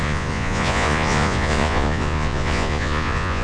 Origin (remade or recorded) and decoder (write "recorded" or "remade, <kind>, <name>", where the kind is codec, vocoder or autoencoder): remade, vocoder, Vocos